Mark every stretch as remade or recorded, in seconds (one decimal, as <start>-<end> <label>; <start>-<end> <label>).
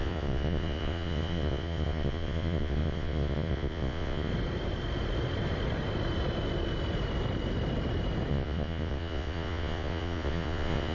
0.0-4.3 remade; 4.3-8.3 recorded; 8.3-10.9 remade